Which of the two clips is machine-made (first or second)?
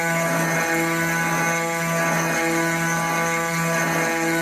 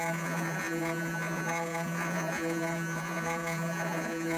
second